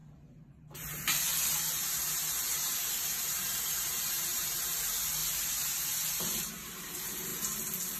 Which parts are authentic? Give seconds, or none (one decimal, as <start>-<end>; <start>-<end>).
5.2-6.4; 7.3-8.0